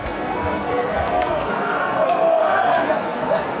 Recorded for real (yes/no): no